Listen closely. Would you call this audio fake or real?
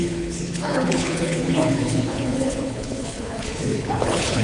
fake